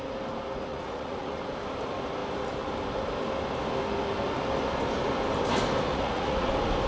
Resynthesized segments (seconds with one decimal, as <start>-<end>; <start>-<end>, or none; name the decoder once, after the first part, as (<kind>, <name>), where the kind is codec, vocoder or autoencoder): 0.7-1.4 (vocoder, Vocos); 5.9-6.5